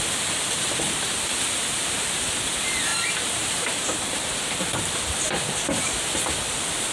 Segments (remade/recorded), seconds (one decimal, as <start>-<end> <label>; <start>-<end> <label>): 0.0-2.9 recorded; 2.9-4.6 remade; 4.6-6.9 recorded